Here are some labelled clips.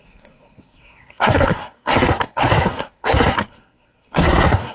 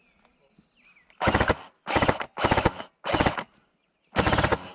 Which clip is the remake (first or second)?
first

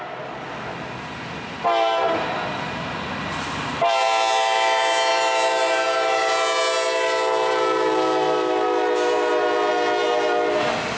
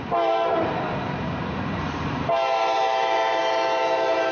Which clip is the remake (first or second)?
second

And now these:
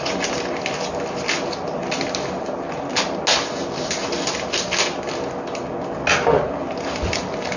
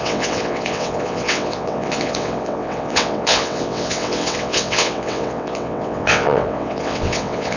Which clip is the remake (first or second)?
second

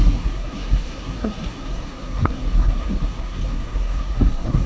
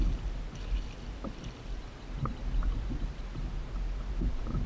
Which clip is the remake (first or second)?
first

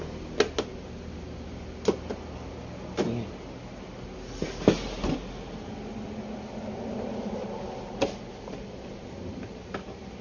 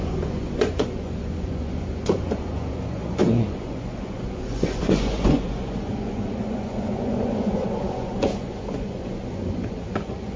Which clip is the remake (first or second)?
second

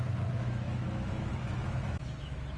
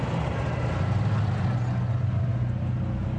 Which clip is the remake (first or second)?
first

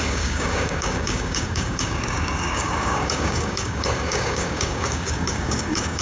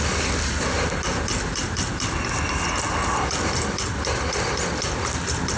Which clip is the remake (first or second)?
first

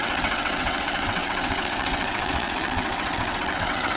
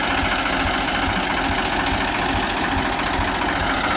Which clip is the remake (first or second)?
first